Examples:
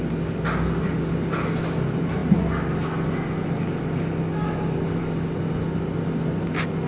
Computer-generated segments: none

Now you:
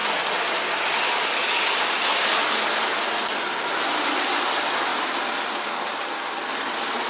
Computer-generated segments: none

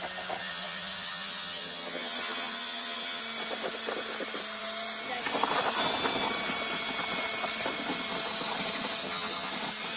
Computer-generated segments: 0.4-3.2; 9.0-9.5

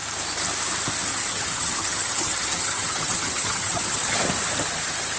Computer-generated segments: 1.1-4.2

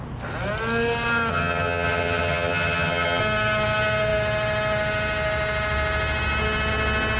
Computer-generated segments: 1.3-3.2

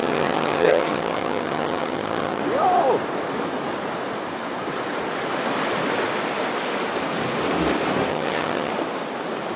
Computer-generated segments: 0.0-2.4; 8.1-8.7

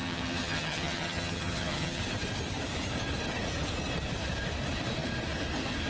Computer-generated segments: 0.0-2.0

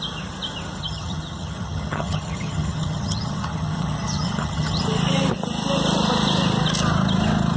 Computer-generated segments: 0.8-4.8